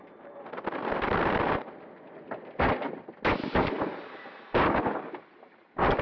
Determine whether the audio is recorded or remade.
recorded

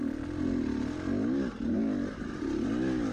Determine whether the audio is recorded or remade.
recorded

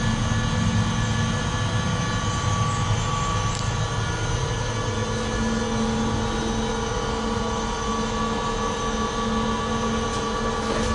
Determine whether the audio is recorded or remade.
recorded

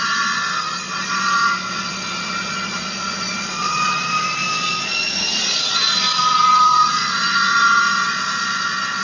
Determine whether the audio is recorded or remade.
remade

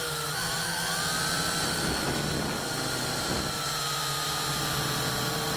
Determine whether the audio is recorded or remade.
recorded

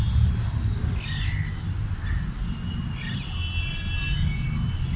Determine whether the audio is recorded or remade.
recorded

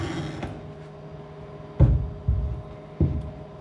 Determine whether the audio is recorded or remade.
recorded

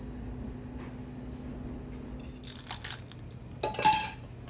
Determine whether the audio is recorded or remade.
recorded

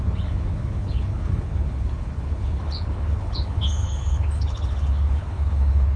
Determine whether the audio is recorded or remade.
remade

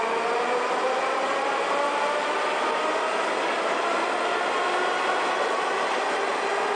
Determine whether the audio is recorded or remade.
recorded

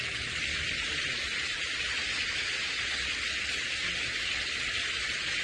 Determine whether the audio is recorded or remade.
recorded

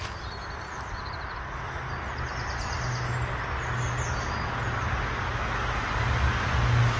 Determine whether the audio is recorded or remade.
recorded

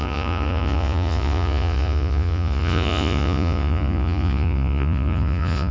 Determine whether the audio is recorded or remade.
remade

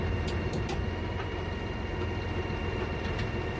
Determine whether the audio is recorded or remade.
recorded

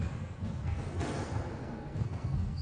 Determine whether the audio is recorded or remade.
remade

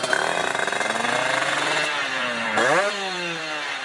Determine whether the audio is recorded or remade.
remade